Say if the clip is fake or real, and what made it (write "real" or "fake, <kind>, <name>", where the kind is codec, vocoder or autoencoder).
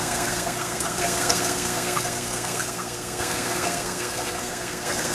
fake, codec, SNAC